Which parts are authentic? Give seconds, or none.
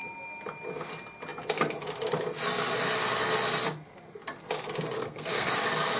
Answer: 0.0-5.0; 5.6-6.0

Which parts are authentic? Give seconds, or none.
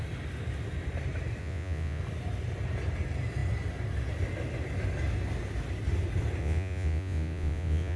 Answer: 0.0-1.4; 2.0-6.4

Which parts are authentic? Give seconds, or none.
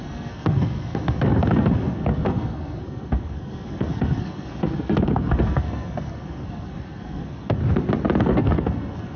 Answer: 7.6-8.2